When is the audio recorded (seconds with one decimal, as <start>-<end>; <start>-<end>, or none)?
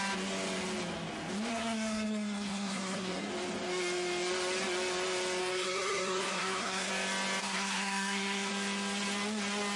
0.0-1.5; 3.3-5.4; 6.9-7.4; 8.5-9.8